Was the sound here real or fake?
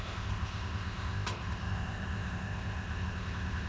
fake